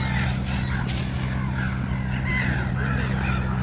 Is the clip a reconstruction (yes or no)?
no